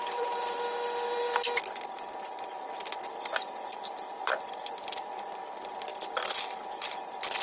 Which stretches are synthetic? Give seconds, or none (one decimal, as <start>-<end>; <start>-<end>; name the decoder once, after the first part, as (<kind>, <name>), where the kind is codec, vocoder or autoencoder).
none